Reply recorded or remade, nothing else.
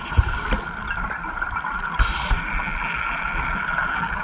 recorded